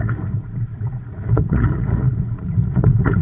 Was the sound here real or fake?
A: fake